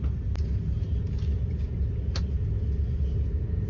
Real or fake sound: real